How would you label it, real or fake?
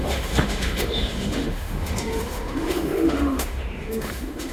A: fake